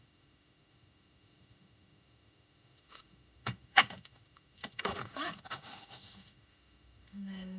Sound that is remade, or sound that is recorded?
remade